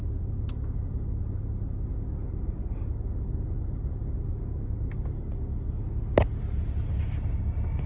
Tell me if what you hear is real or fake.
real